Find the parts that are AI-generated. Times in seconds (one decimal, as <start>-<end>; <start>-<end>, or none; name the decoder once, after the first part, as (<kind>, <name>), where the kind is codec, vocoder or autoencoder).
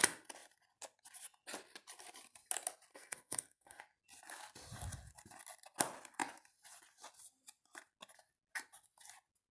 2.9-3.8 (codec, SNAC)